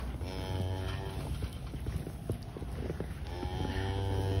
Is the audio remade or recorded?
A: recorded